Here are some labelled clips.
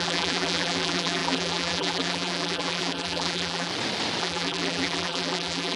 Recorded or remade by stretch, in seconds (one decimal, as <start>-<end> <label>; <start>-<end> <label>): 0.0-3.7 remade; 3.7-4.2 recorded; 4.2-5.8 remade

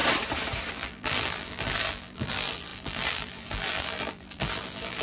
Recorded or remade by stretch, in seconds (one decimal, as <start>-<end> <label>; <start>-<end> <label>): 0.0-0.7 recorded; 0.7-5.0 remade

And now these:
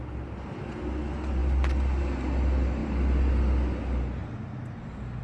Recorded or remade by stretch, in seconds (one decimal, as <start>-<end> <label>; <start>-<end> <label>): 0.0-5.2 recorded

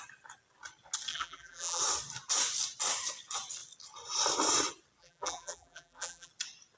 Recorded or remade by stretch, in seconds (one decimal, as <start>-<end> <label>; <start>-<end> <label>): 0.0-1.1 recorded; 1.1-1.8 remade; 1.8-5.0 recorded; 5.0-6.3 remade; 6.3-6.8 recorded

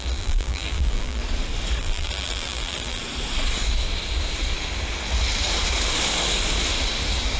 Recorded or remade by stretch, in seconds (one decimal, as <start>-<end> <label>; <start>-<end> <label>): 0.0-1.2 remade; 1.2-1.8 recorded; 1.8-3.0 remade; 3.0-7.4 recorded

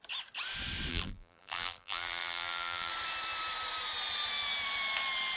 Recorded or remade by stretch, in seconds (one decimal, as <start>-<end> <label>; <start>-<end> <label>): 0.0-0.9 recorded; 0.9-2.9 remade; 2.9-5.4 recorded

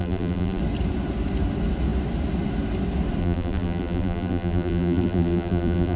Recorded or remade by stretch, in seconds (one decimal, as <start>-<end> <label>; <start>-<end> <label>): 0.0-0.6 remade; 0.6-3.2 recorded; 3.2-6.0 remade

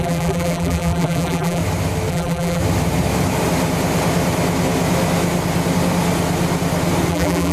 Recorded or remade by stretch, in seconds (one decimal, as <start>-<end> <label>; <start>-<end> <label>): 0.0-1.6 remade; 1.6-2.1 recorded; 2.1-2.6 remade; 2.6-7.1 recorded; 7.1-7.5 remade